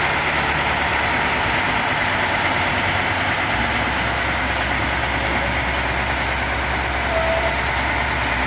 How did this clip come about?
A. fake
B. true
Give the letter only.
B